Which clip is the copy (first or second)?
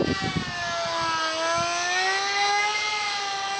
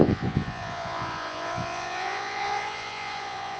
second